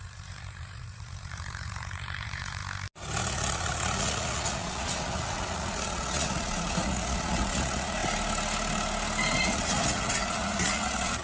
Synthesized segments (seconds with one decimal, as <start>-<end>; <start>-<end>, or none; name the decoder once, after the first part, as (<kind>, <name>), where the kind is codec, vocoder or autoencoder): 0.0-2.6 (vocoder, Vocos); 3.2-8.0; 9.4-11.2